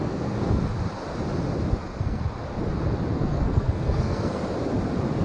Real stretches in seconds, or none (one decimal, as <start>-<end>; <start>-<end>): 0.7-1.7; 2.2-3.1; 4.4-5.2